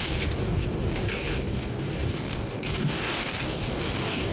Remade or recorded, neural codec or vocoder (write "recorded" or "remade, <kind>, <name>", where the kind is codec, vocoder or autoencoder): remade, codec, DAC